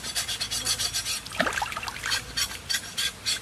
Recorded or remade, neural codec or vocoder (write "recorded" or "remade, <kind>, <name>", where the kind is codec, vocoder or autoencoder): recorded